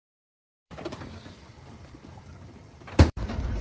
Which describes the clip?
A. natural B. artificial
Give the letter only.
B